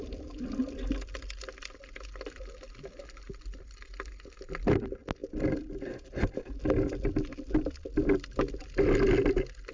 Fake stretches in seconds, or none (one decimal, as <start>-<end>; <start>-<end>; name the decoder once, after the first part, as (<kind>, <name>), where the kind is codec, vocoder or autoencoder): none